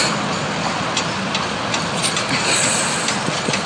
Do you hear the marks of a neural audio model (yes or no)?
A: no